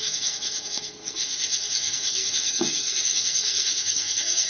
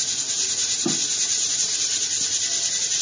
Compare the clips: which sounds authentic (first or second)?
second